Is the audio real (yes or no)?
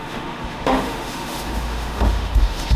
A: no